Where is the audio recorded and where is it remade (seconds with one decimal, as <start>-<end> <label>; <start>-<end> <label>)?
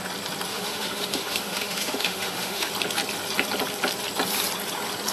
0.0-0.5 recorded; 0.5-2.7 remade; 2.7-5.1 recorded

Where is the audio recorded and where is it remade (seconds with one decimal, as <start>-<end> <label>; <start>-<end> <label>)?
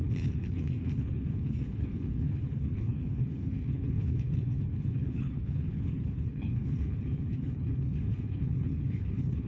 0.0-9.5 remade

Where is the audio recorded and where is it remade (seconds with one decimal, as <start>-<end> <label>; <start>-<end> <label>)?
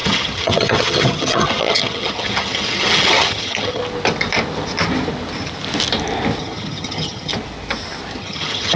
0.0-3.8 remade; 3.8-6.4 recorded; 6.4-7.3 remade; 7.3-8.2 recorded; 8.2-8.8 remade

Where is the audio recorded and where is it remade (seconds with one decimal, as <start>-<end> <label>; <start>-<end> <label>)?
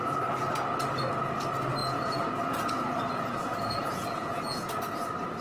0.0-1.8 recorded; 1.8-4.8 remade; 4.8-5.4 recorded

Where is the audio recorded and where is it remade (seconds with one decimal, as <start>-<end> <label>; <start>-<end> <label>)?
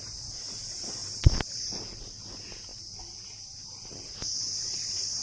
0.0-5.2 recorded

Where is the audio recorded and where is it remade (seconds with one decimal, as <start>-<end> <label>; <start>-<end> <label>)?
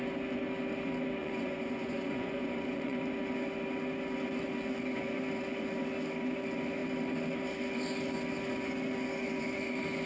0.0-1.2 recorded; 1.2-3.0 remade; 3.0-10.1 recorded